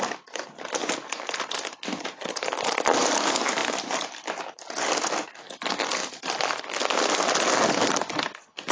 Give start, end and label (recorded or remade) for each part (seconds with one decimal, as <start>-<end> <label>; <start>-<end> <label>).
0.0-3.6 recorded; 3.6-4.4 remade; 4.4-8.7 recorded